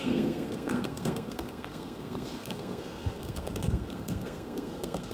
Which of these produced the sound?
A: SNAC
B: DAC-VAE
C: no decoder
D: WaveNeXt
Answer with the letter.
A